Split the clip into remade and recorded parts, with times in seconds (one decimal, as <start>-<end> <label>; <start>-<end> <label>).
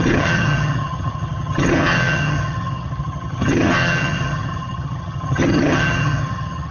0.0-6.7 remade